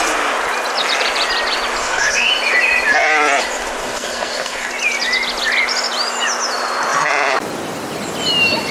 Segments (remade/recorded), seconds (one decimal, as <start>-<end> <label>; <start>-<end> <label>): 0.0-1.8 recorded; 1.8-2.3 remade; 2.3-3.8 recorded; 3.8-4.7 remade; 4.7-8.7 recorded